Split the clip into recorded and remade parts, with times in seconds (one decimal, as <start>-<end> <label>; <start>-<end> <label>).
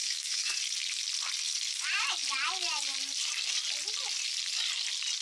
0.0-0.6 remade; 0.6-5.2 recorded